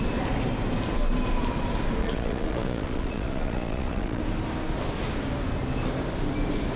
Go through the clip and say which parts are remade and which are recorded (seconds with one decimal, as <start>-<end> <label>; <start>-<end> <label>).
0.0-2.0 recorded; 2.0-4.2 remade; 4.2-6.8 recorded